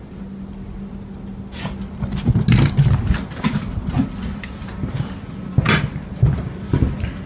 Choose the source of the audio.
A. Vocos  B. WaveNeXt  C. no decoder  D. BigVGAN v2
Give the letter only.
C